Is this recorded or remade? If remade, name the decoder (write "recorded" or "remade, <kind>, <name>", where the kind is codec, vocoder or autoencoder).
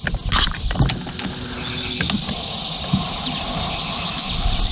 recorded